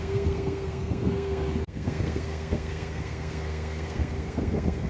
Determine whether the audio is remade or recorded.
remade